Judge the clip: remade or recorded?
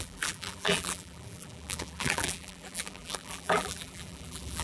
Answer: remade